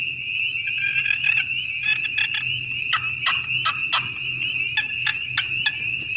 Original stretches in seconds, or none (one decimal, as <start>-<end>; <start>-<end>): 0.0-6.2